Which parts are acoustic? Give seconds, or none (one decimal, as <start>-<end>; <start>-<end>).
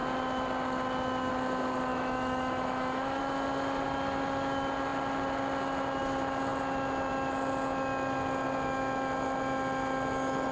0.0-1.9; 3.2-10.5